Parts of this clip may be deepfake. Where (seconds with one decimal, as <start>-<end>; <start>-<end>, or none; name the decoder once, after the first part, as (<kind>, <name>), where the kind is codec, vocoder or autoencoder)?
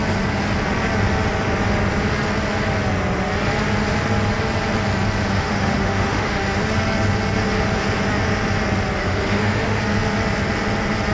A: 5.3-6.6 (autoencoder, DAC-VAE); 9.0-9.8